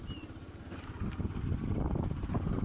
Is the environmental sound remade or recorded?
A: recorded